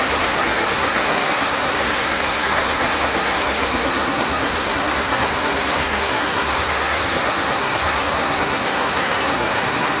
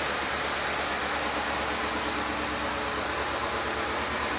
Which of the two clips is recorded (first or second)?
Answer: second